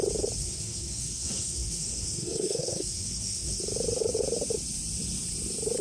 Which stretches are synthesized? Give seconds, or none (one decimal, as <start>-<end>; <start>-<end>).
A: 0.4-3.6